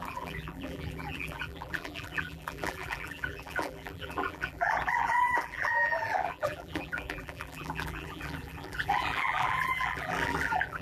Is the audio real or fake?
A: fake